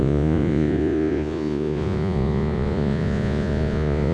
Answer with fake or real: fake